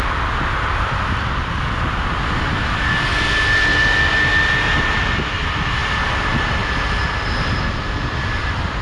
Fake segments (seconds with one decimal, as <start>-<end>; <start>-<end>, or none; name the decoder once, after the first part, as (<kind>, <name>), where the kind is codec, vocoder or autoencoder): none